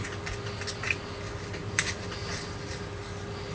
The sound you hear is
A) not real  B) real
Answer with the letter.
B